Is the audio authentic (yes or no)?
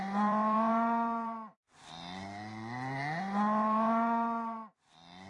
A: no